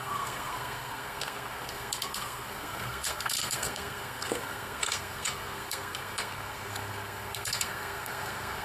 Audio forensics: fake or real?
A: fake